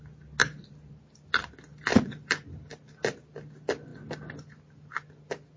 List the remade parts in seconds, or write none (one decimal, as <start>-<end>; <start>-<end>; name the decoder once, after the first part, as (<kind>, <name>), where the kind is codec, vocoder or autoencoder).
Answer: 0.4-0.9 (vocoder, BigVGAN v2); 1.9-2.5